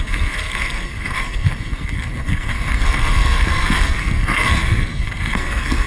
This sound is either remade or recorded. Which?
remade